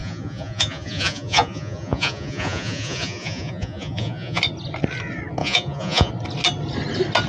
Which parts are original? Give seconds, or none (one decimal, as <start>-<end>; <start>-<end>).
4.4-5.4; 6.1-7.3